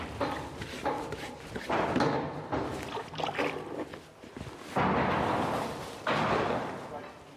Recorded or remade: recorded